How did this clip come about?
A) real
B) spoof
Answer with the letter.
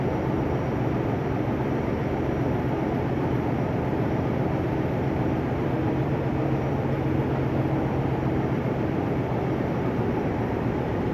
B